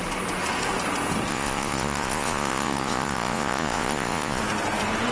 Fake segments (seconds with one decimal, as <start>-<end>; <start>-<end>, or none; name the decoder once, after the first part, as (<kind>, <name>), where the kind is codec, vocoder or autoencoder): 1.3-4.4 (vocoder, Vocos)